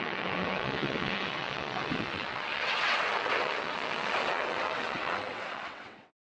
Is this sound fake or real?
fake